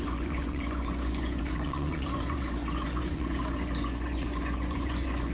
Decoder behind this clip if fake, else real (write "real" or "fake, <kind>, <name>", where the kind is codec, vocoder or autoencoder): fake, vocoder, Vocos